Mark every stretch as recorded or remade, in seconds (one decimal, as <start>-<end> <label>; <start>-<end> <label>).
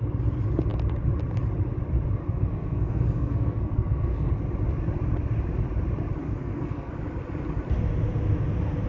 0.0-2.2 recorded; 2.2-4.3 remade; 4.3-6.2 recorded; 6.2-6.9 remade; 6.9-8.9 recorded